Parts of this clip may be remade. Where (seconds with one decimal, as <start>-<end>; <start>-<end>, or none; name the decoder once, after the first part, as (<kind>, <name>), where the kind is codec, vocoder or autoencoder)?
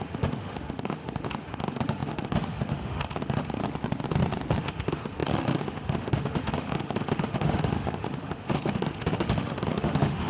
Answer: 0.0-3.6 (autoencoder, DAC-VAE); 4.6-10.3